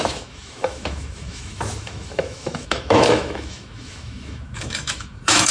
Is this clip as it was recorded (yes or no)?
no